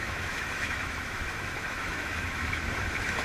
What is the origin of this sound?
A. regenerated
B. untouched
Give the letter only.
A